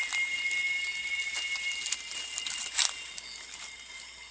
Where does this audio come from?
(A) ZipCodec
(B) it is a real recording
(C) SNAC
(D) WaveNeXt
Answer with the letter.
B